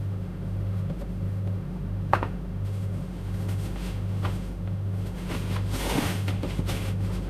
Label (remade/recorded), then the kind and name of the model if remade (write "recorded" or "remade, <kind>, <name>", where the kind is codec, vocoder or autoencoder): remade, autoencoder, DAC-VAE